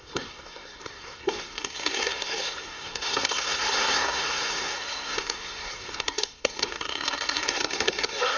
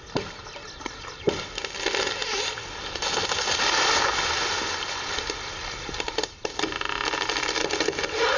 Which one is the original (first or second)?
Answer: second